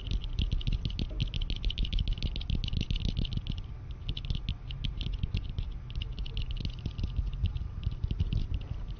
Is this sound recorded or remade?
recorded